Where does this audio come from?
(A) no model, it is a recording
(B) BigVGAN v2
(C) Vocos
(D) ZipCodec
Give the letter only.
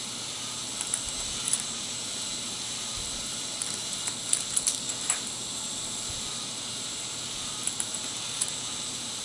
B